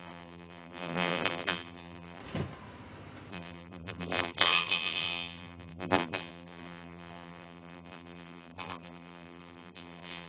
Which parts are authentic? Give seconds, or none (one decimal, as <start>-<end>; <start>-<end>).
2.2-3.3